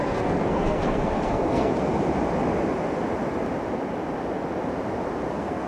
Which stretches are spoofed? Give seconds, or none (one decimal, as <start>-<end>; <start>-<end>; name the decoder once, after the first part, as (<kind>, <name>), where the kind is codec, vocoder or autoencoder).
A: 0.0-1.9 (codec, SNAC); 5.3-5.7